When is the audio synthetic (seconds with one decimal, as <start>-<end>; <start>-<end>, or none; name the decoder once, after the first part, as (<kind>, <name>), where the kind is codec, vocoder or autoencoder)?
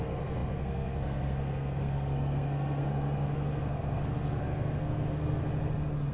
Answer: 0.0-5.4 (codec, SNAC)